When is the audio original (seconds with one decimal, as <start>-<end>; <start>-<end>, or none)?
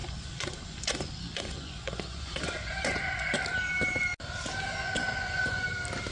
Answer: 3.4-4.8; 5.6-6.1